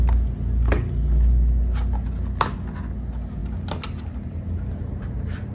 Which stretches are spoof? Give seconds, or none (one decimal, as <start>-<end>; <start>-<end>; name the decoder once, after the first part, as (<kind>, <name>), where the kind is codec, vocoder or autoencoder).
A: none